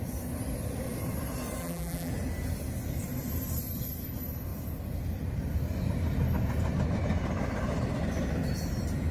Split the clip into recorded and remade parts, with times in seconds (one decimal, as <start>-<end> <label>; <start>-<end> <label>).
0.0-1.6 recorded; 1.6-2.1 remade; 2.1-9.1 recorded